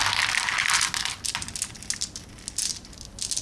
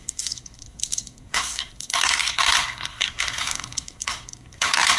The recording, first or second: first